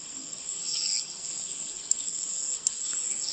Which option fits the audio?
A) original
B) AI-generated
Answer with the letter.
B